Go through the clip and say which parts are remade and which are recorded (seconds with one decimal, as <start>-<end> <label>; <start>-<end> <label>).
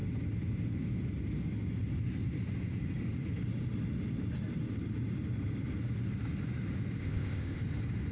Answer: 0.0-7.0 recorded; 7.0-7.6 remade; 7.6-8.1 recorded